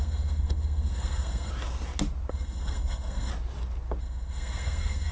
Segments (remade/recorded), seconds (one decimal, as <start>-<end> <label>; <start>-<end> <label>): 0.0-1.5 remade; 1.5-2.3 recorded; 2.3-3.3 remade; 3.3-4.0 recorded; 4.0-5.1 remade